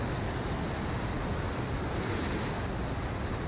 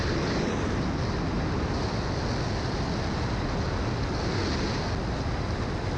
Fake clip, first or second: first